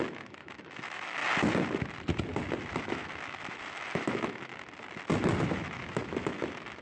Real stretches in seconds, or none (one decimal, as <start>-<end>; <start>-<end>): 1.2-2.8; 4.5-5.4